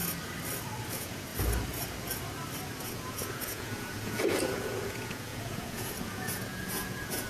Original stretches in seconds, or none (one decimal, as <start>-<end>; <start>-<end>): 0.0-0.9; 1.3-2.8